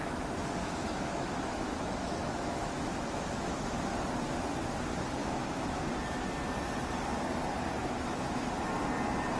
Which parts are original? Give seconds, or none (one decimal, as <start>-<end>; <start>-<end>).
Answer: 3.8-5.2; 5.9-7.8; 8.5-9.4